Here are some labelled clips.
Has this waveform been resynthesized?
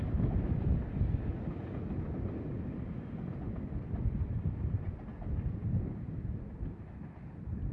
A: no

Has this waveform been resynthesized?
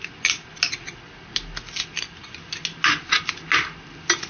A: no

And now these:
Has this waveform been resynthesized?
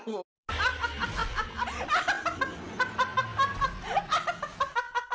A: no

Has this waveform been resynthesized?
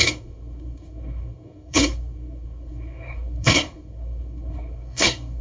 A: yes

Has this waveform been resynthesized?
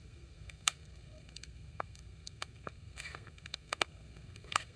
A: yes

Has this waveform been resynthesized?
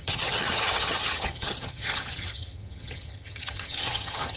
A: yes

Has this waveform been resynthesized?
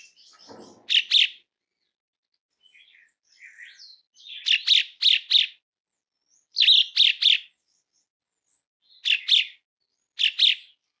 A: no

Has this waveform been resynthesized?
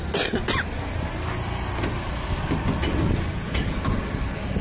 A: no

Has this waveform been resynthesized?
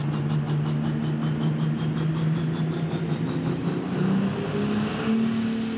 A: no